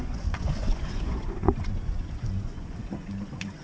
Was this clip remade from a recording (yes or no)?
yes